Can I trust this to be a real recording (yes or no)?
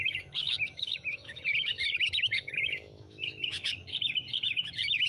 no